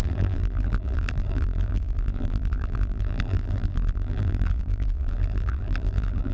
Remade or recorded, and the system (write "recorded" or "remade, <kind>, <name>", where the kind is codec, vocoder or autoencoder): remade, vocoder, BigVGAN v2